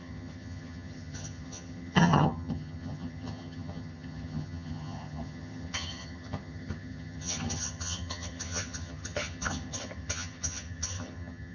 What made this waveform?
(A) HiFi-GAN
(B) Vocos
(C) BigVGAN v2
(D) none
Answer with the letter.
A